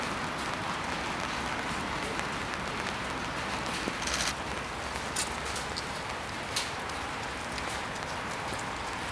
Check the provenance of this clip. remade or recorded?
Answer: recorded